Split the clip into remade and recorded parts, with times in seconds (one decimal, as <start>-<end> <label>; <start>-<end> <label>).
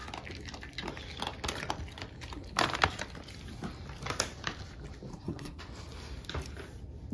0.0-5.1 recorded; 5.1-5.6 remade; 5.6-7.1 recorded